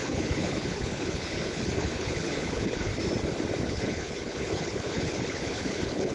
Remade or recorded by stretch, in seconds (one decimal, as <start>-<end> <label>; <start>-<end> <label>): 0.0-2.9 remade; 2.9-3.6 recorded; 3.6-6.1 remade